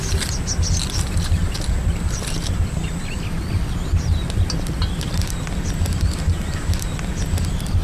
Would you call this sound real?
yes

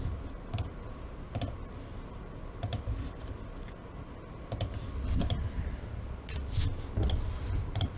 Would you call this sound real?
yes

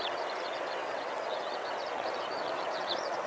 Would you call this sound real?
no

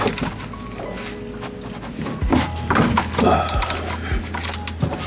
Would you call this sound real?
yes